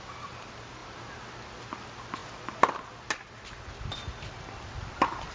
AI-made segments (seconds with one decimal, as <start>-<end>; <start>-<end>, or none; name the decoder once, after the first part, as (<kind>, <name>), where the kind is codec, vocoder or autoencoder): none